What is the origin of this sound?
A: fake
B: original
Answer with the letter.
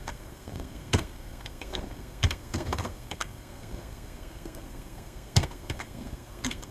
A